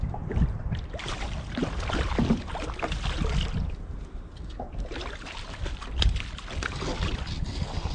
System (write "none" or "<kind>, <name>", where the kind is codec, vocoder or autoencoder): none